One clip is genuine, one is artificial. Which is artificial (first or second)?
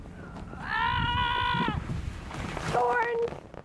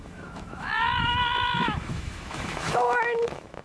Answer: second